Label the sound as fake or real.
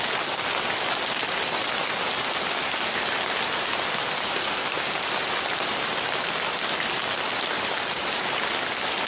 real